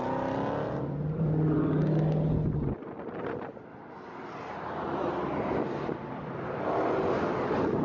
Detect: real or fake real